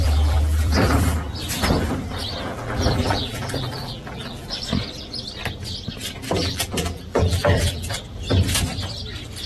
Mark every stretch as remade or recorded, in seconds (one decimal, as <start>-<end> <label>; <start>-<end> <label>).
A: 0.0-1.3 remade; 1.3-2.5 recorded; 2.5-4.5 remade; 4.5-6.4 recorded; 6.4-8.0 remade; 8.0-9.5 recorded